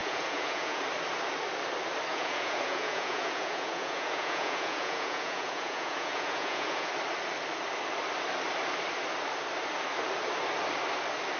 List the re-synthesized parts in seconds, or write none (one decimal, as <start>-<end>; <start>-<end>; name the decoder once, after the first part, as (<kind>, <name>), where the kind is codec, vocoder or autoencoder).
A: 0.0-0.8 (vocoder, Vocos); 2.1-6.9